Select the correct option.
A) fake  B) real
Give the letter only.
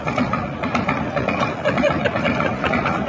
A